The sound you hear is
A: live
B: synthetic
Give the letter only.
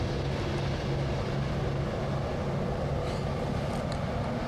A